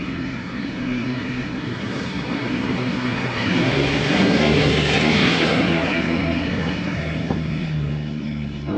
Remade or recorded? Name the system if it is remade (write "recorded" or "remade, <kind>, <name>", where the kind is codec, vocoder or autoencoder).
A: remade, codec, SNAC